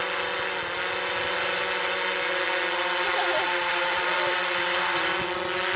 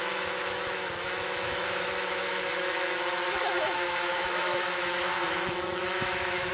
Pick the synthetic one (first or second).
second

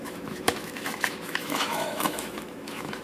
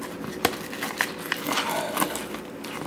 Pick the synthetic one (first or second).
first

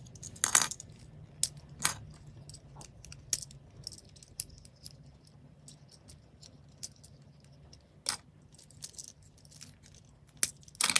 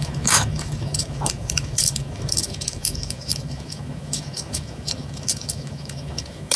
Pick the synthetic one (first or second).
second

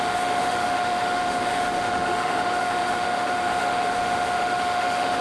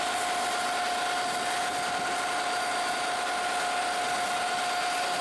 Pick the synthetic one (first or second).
first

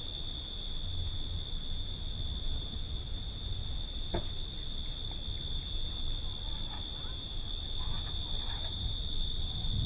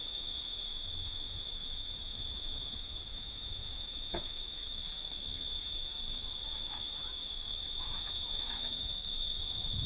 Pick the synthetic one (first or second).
second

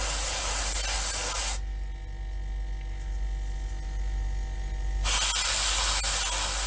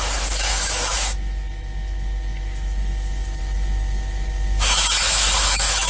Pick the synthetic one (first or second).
second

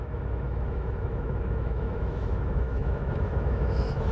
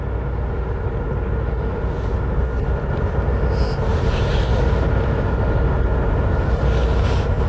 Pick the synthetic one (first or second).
first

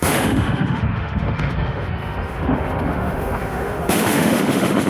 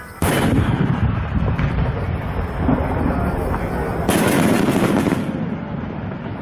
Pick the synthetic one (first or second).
first